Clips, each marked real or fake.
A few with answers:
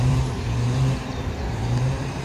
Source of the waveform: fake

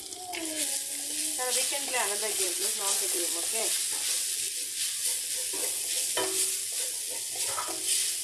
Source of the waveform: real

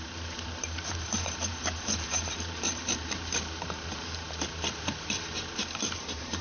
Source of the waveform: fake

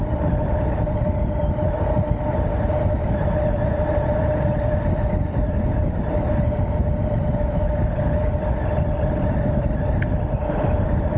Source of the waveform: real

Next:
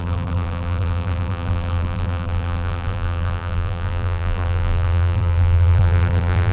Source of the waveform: fake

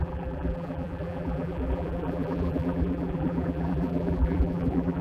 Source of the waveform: fake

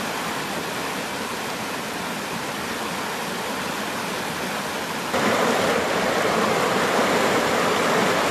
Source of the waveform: real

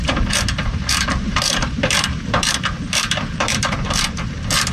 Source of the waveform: fake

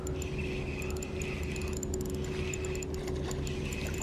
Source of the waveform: real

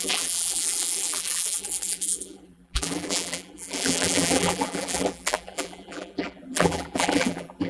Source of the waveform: fake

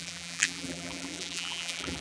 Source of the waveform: fake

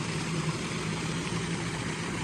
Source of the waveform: fake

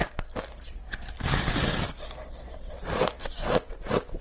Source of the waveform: real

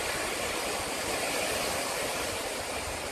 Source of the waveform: real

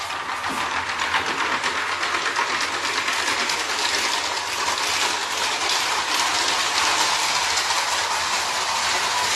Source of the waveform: real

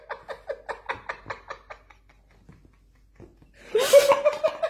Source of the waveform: real